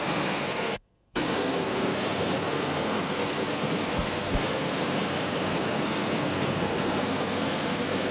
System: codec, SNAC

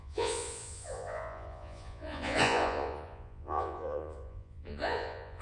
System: vocoder, Vocos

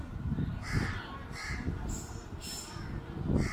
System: none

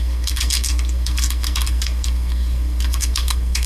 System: codec, SNAC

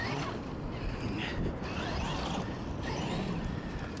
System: none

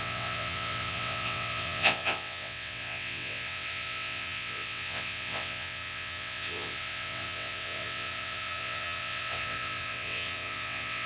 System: vocoder, WaveNeXt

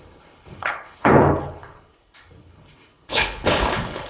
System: codec, HILCodec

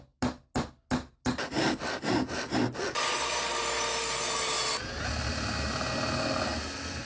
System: none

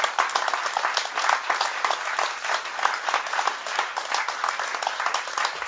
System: none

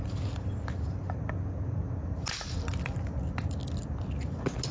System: none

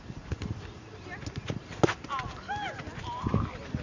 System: none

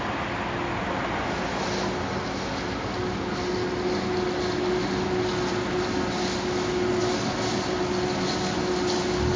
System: none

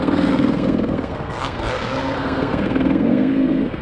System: codec, SNAC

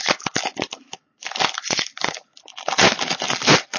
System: none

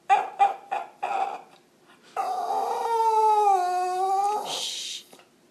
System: none